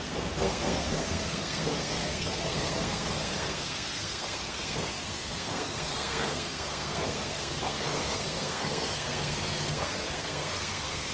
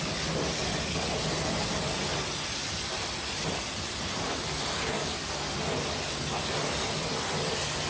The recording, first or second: second